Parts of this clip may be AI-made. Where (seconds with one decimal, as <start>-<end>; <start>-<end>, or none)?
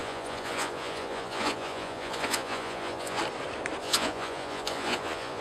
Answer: 0.0-3.2; 3.8-5.4